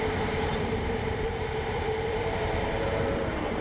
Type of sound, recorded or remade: remade